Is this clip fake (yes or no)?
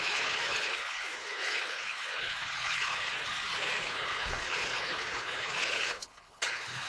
yes